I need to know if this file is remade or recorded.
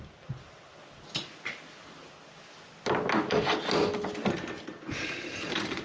recorded